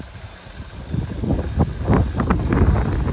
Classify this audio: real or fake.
real